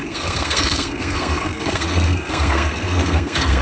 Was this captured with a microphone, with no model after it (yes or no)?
no